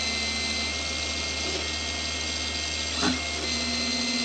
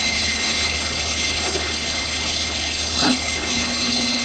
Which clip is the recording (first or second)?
first